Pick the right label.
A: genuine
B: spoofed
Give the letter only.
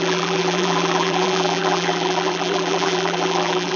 B